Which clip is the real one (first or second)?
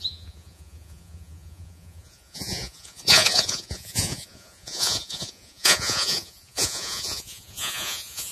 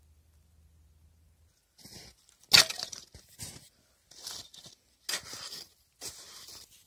second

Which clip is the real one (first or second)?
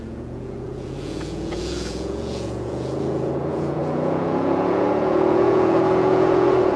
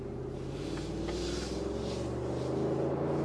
second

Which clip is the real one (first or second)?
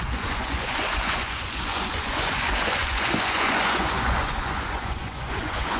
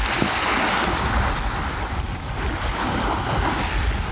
second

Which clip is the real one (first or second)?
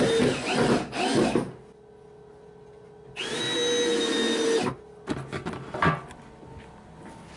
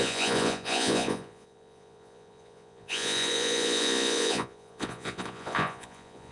first